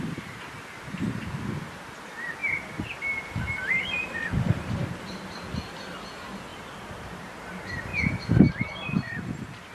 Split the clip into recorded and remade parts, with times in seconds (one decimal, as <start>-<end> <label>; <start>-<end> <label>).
0.0-9.7 recorded